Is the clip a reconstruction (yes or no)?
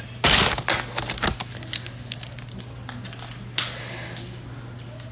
no